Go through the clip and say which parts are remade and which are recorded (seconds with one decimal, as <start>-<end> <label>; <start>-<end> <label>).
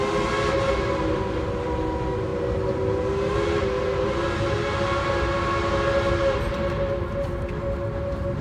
0.0-8.4 recorded